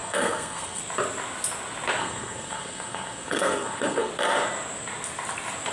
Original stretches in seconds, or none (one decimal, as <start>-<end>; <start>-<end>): 0.8-2.0; 4.1-5.7